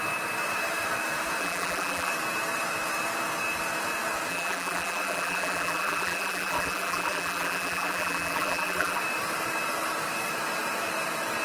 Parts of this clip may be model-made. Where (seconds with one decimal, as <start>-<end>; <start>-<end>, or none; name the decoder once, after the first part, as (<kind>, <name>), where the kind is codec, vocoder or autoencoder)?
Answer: 1.4-2.1 (vocoder, BigVGAN v2); 4.3-9.0